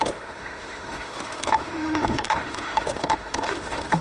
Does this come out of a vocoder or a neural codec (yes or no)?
yes